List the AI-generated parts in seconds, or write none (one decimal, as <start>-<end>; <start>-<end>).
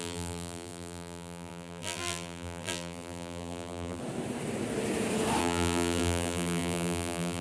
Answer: 0.0-4.0; 5.4-7.4